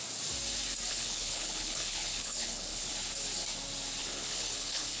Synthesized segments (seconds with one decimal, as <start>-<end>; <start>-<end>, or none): 0.9-2.9; 4.0-5.0